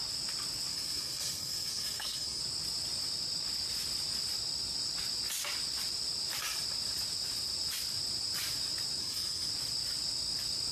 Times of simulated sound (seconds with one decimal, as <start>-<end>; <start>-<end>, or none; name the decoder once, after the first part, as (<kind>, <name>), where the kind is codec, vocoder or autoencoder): 0.7-2.4 (codec, SNAC); 9.0-9.5